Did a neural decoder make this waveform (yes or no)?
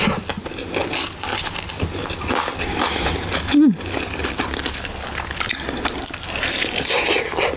no